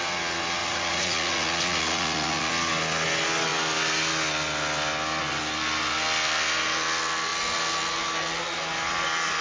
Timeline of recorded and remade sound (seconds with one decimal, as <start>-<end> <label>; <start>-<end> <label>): 0.0-0.6 recorded; 0.6-2.5 remade; 2.5-9.4 recorded